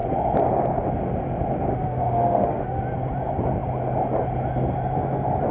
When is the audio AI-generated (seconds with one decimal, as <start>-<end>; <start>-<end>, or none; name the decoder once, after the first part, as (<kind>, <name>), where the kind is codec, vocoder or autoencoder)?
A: 1.7-2.8 (autoencoder, DAC-VAE)